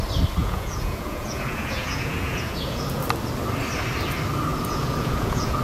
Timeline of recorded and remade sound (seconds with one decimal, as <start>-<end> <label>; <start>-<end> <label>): 0.0-0.4 recorded; 0.4-3.0 remade; 3.0-4.5 recorded; 4.5-5.6 remade